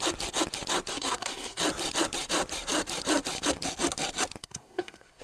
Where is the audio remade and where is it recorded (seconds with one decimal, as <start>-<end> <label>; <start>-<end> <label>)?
0.0-0.9 recorded; 0.9-1.6 remade; 1.6-4.4 recorded; 4.4-5.2 remade